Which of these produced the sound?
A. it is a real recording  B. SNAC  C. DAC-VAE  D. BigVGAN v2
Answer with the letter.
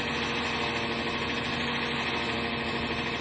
A